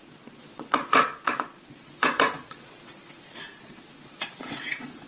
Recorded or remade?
remade